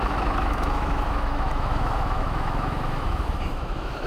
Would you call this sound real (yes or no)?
no